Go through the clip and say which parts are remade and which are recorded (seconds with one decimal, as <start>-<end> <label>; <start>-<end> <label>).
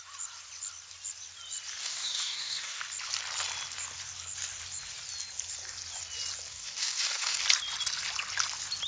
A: 0.0-1.8 recorded; 1.8-2.8 remade; 2.8-6.5 recorded; 6.5-7.4 remade; 7.4-8.9 recorded